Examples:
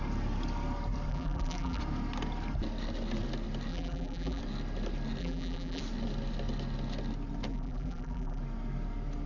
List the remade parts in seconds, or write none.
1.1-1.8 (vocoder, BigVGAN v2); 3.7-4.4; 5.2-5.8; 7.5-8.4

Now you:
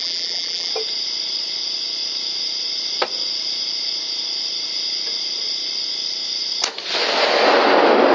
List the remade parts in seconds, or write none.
0.0-0.7 (vocoder, BigVGAN v2)